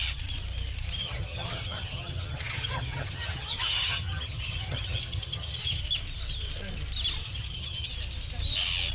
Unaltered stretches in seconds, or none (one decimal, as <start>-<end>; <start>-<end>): 0.0-1.0; 5.8-7.2; 7.9-8.9

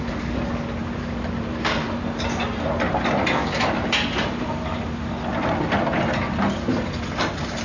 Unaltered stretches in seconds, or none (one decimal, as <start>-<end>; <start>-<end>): 0.0-7.6

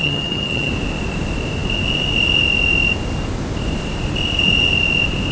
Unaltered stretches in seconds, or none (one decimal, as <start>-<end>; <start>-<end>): 0.7-5.3

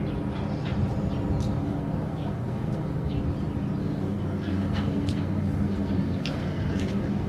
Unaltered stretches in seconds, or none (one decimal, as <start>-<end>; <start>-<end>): 0.0-1.6; 3.2-3.8

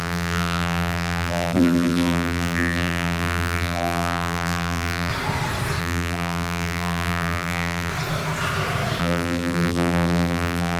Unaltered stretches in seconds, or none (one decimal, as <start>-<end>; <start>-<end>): 5.1-5.8; 7.9-9.0

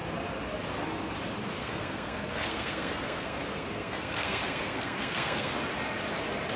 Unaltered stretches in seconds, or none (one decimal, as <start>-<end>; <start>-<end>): 0.0-1.6; 5.6-6.6

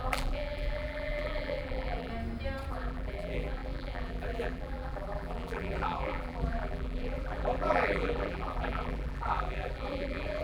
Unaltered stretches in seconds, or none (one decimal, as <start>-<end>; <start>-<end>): 2.1-2.7